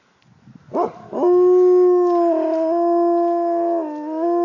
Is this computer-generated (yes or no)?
no